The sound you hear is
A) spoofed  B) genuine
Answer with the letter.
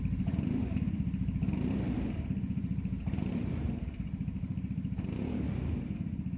A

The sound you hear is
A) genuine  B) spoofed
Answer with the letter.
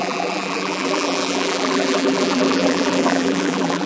B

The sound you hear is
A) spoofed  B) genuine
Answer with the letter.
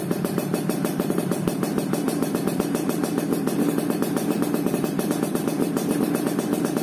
A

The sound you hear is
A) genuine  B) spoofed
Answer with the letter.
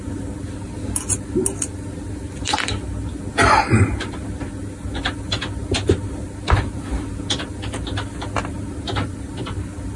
B